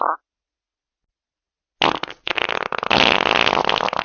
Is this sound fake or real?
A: real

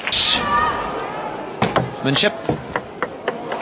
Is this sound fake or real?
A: real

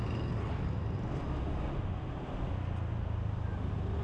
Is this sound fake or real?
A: real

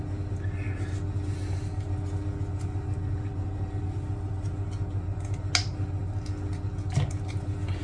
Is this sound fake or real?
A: real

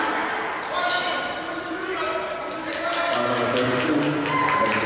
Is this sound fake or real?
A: real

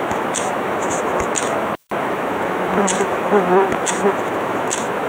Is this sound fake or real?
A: fake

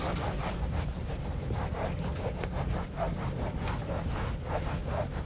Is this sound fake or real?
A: real